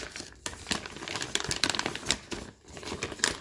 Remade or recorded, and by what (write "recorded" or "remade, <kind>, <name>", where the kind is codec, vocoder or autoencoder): recorded